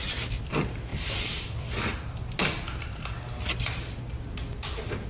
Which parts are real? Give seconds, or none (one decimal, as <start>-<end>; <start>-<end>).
0.0-5.1